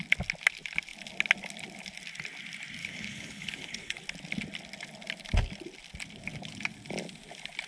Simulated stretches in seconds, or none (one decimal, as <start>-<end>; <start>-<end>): 2.8-4.0